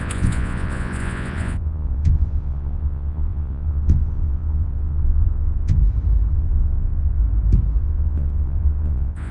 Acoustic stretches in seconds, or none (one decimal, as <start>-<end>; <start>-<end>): 5.8-6.3; 7.2-7.8